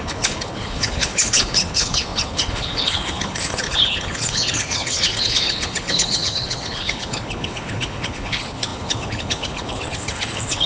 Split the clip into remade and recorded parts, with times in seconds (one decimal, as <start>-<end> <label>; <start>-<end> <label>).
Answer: 0.0-10.7 remade